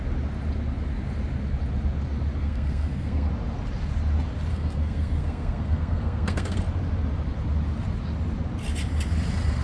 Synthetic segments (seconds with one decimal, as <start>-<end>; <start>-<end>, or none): 2.4-3.3; 4.5-6.6